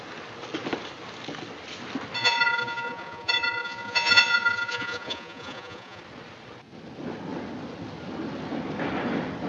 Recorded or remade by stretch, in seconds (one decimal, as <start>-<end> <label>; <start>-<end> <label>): 0.0-2.2 recorded; 2.2-6.0 remade; 6.0-9.5 recorded